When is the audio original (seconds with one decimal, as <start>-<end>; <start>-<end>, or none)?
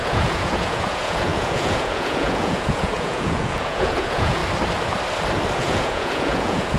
4.4-5.6